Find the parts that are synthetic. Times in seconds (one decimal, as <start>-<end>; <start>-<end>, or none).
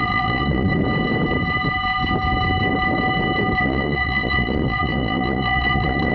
0.0-0.8; 3.6-6.1